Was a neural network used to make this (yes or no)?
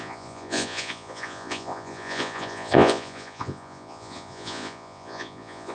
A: yes